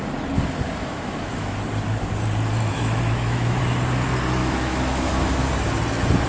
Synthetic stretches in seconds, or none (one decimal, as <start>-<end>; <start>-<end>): 0.8-1.6; 2.7-3.6; 4.4-5.5